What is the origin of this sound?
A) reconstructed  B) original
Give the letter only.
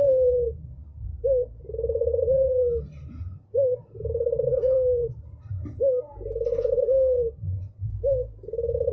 A